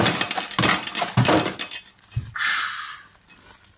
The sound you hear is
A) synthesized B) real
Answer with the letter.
B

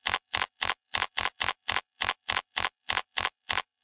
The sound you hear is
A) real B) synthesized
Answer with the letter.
B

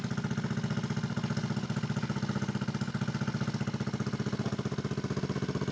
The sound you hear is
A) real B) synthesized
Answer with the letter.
A